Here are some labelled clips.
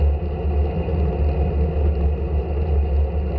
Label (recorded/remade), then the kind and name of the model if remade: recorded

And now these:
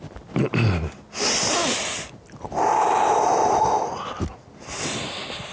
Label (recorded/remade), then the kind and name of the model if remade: recorded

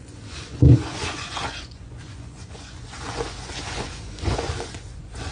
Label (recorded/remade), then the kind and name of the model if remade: remade, vocoder, Vocos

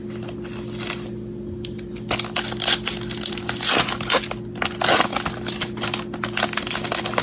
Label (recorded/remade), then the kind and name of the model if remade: recorded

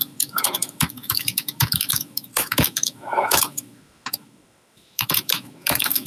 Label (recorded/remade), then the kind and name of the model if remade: remade, autoencoder, DAC-VAE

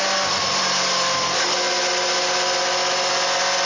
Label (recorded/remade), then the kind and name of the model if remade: recorded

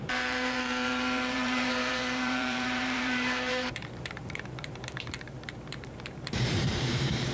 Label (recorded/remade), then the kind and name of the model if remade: remade, vocoder, BigVGAN v2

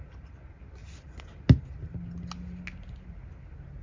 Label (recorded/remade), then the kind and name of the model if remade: recorded